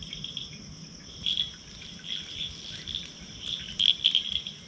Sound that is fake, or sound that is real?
real